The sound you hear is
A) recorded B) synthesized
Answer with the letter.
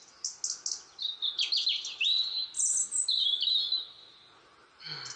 A